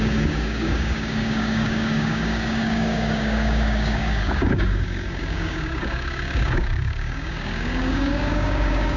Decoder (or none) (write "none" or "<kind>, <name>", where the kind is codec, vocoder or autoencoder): codec, DAC